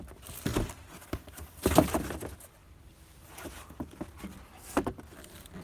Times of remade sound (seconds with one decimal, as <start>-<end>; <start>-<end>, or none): 0.0-0.5; 1.6-2.6; 4.0-4.5